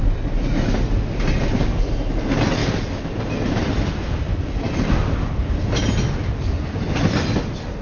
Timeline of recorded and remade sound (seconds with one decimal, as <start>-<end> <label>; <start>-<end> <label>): 0.0-7.8 recorded